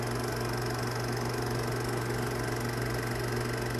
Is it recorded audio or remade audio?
recorded